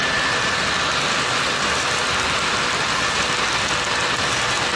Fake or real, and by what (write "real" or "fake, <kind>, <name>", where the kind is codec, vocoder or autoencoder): real